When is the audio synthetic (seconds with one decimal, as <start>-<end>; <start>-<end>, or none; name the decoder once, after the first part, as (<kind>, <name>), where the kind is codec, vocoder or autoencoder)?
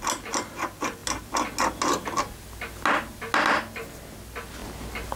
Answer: none